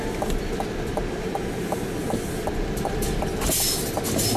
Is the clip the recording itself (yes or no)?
yes